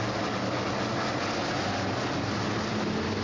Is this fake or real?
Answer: real